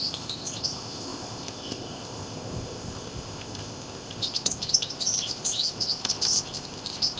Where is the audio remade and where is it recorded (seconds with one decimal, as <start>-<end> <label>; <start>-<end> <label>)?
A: 0.0-7.2 remade